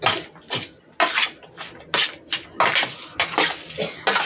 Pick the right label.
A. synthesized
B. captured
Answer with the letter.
B